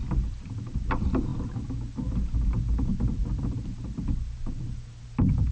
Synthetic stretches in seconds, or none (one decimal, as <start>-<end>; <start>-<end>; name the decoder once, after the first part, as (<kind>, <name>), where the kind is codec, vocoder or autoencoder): none